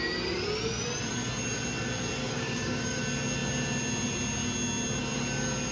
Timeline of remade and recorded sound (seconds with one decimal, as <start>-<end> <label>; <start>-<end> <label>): 0.0-2.2 recorded; 2.2-3.0 remade; 3.0-5.7 recorded